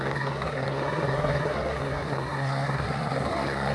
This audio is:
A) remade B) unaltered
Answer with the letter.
A